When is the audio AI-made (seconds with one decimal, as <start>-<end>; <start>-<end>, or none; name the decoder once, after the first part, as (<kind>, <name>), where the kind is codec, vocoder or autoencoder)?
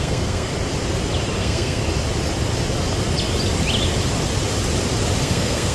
0.0-0.5 (codec, SNAC); 1.4-1.8; 5.2-5.7